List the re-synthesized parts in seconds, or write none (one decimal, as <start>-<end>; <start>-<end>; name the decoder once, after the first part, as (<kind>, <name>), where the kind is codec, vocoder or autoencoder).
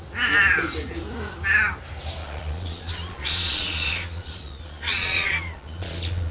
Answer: 2.2-6.3 (vocoder, Vocos)